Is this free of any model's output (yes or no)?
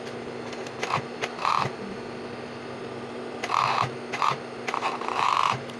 yes